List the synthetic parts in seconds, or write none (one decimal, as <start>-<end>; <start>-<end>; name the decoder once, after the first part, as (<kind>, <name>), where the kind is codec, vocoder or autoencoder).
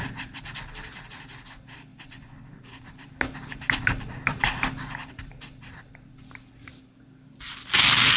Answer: none